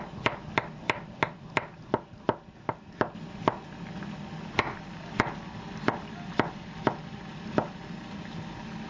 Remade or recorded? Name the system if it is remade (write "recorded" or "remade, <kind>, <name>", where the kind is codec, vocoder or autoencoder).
recorded